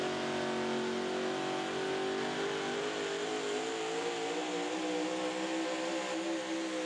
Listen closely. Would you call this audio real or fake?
real